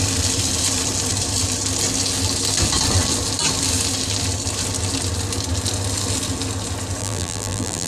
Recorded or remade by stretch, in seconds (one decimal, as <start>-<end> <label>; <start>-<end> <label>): 0.0-7.0 recorded; 7.0-7.9 remade

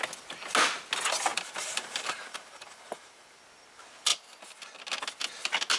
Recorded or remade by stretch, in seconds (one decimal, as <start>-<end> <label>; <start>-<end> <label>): 0.0-1.3 recorded; 1.3-3.4 remade; 3.4-5.8 recorded

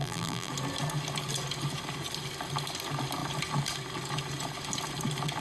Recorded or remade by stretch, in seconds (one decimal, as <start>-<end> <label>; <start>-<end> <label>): 0.0-0.5 remade; 0.5-5.4 recorded

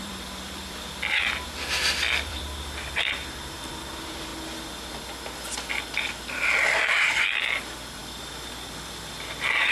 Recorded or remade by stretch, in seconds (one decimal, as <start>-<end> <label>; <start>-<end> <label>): 0.0-4.3 remade; 4.3-5.8 recorded; 5.8-8.0 remade; 8.0-9.1 recorded; 9.1-9.7 remade

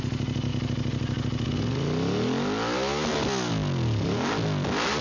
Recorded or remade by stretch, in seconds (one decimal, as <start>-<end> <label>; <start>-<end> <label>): 0.0-5.0 recorded

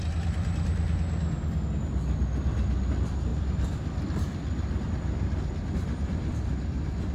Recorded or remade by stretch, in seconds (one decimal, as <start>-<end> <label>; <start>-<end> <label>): 0.0-7.1 recorded

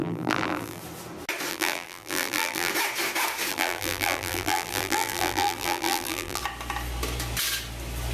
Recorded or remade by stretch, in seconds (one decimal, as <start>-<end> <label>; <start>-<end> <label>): 0.0-0.8 remade; 0.8-1.5 recorded; 1.5-2.7 remade; 2.7-3.5 recorded; 3.5-6.4 remade; 6.4-8.1 recorded